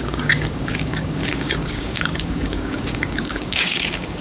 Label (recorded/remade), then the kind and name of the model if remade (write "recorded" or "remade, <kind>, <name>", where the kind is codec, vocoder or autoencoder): remade, codec, DAC